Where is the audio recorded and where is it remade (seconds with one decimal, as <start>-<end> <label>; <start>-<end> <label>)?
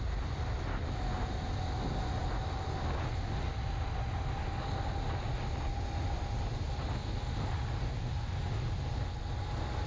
0.0-9.9 recorded